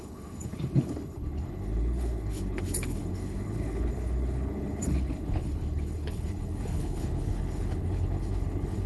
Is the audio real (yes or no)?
no